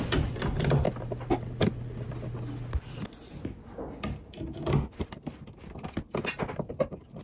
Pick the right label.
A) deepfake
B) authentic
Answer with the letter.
B